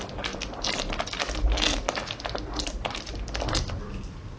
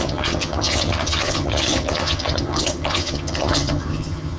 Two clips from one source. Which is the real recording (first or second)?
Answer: first